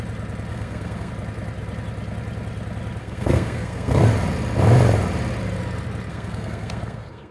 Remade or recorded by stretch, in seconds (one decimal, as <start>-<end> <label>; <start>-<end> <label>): 0.0-0.5 recorded; 0.5-1.1 remade; 1.1-3.0 recorded; 3.0-4.0 remade; 4.0-6.1 recorded; 6.1-7.3 remade